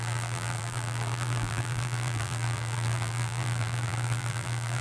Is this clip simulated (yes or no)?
yes